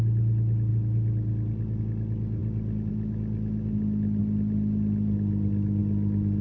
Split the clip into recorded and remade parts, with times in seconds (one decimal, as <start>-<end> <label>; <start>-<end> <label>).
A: 0.0-6.4 recorded